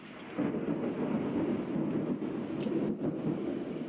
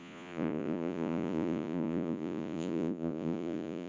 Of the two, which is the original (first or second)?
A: first